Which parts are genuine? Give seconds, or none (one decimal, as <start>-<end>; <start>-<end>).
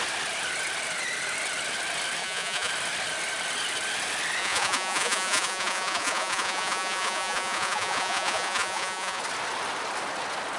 0.0-2.2; 2.7-4.4; 9.2-10.6